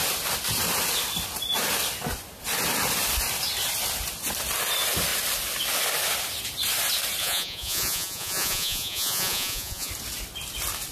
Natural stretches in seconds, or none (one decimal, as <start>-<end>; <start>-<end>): 0.0-7.2; 9.9-10.9